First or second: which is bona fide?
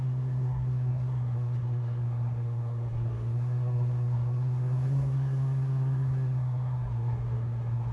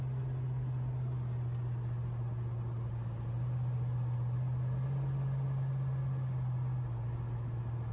second